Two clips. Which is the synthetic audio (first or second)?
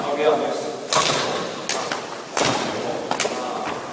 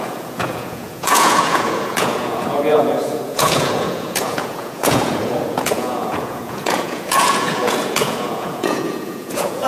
second